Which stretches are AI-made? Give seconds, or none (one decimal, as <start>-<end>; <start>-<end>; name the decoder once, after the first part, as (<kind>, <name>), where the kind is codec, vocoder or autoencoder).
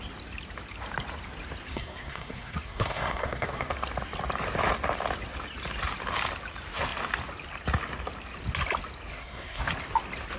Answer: 1.7-3.7 (codec, SNAC); 9.1-9.7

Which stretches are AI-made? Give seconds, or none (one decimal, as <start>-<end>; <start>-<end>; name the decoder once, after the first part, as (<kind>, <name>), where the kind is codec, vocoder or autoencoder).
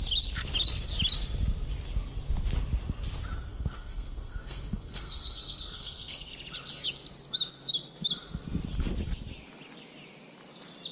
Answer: 3.5-6.3 (codec, SNAC)